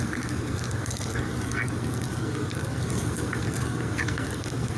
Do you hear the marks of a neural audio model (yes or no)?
yes